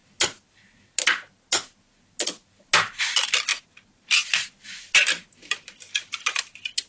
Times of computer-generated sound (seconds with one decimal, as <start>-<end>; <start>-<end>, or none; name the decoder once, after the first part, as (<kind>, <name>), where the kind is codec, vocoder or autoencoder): none